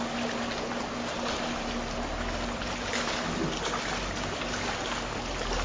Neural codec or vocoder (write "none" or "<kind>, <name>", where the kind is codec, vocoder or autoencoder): none